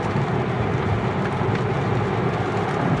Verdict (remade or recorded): recorded